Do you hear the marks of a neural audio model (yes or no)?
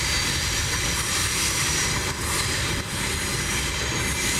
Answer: no